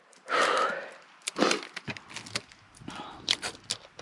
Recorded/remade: recorded